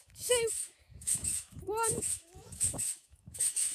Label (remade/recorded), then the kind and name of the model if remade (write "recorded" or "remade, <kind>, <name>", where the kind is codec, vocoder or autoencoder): remade, autoencoder, DAC-VAE